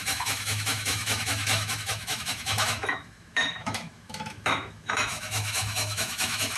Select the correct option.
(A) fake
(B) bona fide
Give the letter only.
A